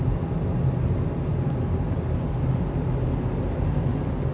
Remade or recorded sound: recorded